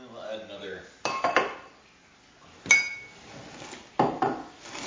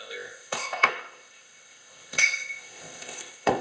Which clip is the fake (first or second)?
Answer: second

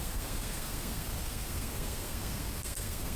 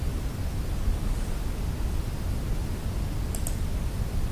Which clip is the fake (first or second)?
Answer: first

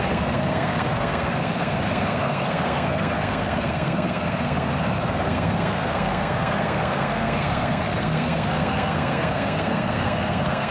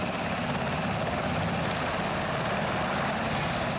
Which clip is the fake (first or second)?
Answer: first